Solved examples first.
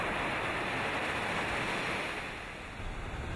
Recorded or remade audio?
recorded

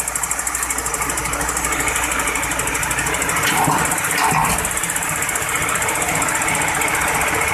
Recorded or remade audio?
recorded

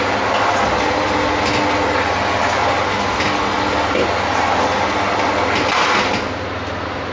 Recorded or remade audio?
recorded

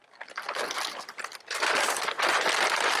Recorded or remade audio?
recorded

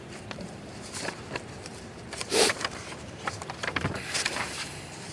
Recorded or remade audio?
remade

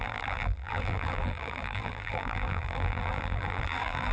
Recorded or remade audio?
remade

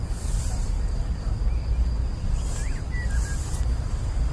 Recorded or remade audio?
recorded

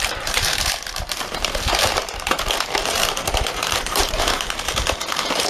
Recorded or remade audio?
remade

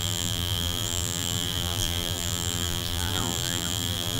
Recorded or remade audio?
remade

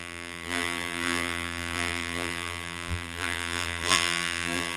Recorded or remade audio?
remade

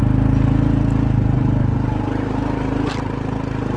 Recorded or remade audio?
recorded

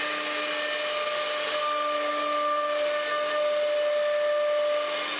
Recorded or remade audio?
recorded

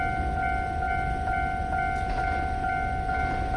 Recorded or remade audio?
recorded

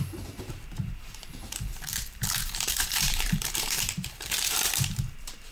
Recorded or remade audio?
remade